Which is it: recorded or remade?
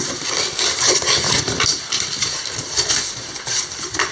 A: recorded